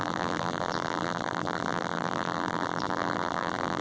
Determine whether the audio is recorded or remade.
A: remade